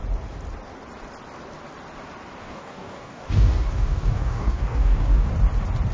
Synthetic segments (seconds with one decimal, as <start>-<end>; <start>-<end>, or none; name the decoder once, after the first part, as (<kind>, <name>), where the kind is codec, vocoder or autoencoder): 2.4-5.3 (codec, DAC)